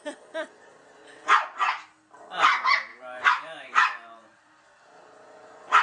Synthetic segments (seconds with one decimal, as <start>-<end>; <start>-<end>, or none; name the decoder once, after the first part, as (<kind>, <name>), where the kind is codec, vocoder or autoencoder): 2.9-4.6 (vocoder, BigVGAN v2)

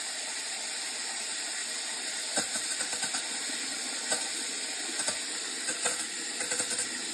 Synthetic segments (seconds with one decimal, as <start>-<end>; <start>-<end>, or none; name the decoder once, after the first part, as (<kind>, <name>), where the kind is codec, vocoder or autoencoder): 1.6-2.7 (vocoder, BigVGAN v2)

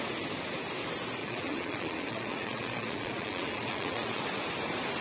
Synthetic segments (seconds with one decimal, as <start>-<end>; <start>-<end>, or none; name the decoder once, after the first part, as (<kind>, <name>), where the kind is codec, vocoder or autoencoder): 1.2-4.2 (vocoder, Vocos)

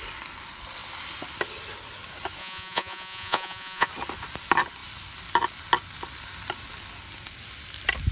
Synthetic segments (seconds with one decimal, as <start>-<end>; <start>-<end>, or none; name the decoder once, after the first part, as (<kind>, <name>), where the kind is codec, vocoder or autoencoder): 2.4-3.9 (vocoder, Vocos)

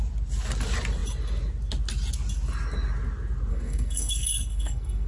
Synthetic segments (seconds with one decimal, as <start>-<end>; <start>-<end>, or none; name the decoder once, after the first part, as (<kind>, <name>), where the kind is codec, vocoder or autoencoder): 3.5-5.1 (codec, SNAC)

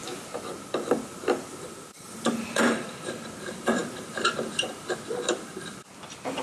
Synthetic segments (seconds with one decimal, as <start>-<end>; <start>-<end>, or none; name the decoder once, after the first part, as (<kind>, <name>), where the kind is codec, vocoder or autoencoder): 1.5-6.4 (vocoder, BigVGAN v2)

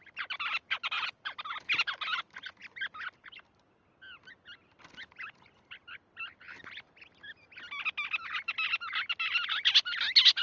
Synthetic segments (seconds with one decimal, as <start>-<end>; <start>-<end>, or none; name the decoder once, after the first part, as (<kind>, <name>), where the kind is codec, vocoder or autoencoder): none